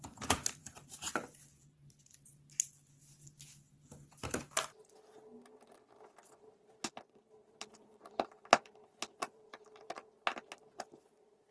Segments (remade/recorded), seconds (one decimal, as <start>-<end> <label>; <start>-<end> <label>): 0.0-2.3 remade; 2.3-6.4 recorded; 6.4-10.0 remade; 10.0-11.1 recorded; 11.1-11.5 remade